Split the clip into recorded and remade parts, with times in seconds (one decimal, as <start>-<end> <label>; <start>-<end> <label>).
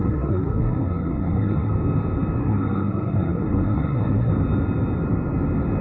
0.0-1.7 remade; 1.7-2.4 recorded; 2.4-4.3 remade; 4.3-5.8 recorded